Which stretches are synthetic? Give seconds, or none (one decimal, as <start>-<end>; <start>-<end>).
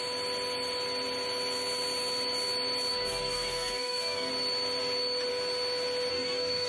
2.9-4.3; 6.1-6.7